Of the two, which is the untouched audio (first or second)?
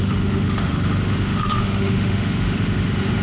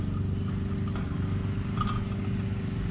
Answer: second